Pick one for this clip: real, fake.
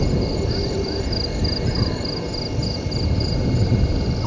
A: real